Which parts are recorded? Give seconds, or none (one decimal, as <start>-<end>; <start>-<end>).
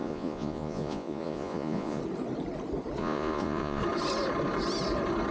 2.0-3.0; 3.8-5.3